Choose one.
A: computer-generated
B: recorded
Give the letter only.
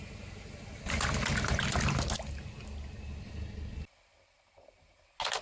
B